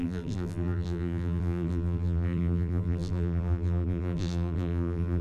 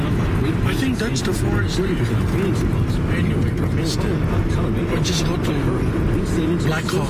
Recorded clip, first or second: second